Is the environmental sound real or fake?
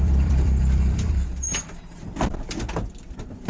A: fake